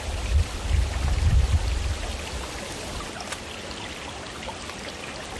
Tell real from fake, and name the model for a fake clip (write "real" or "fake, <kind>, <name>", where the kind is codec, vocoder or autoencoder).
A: real